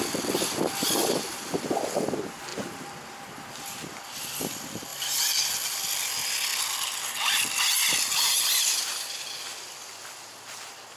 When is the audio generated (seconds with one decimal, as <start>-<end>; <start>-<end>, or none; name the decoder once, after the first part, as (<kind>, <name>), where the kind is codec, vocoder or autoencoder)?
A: 2.5-3.3 (vocoder, BigVGAN v2)